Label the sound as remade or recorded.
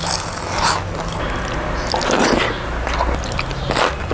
recorded